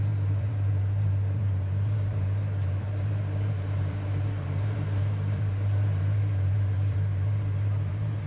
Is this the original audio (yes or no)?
no